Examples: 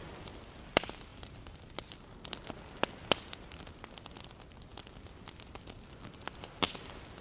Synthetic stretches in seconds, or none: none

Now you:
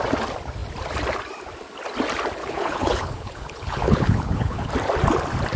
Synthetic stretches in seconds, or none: 2.4-4.7 (codec, HILCodec)

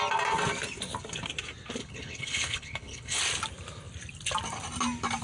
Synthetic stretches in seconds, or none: 1.8-3.2 (codec, HILCodec)

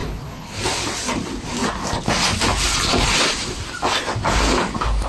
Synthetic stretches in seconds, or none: 0.0-0.6 (codec, HILCodec)

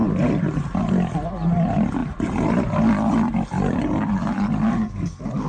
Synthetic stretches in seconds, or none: none

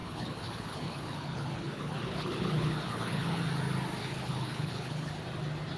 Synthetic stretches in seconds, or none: 0.0-3.4 (codec, HILCodec); 4.0-5.1

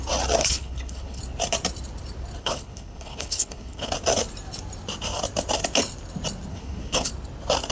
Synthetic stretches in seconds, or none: 0.4-1.2 (codec, HILCodec); 2.4-3.9; 6.5-7.1